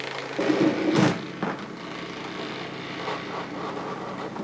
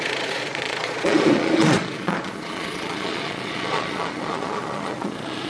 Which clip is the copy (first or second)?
second